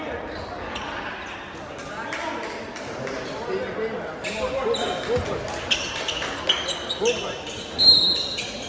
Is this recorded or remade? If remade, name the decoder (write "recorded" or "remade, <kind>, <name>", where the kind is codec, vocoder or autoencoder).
recorded